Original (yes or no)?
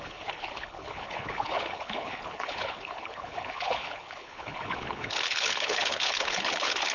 no